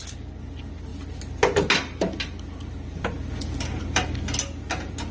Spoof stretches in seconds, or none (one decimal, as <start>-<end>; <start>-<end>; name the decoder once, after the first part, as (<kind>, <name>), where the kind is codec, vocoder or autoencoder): none